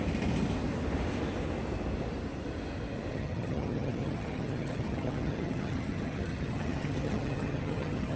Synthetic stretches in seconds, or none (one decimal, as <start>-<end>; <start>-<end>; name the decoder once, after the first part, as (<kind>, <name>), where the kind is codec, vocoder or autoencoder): 3.1-8.2 (vocoder, HiFi-GAN)